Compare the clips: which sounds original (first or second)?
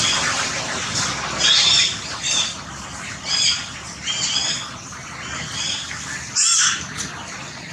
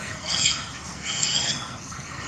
first